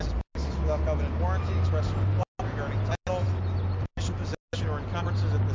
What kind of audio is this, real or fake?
real